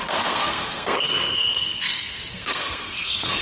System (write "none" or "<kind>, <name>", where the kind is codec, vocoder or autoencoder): codec, SNAC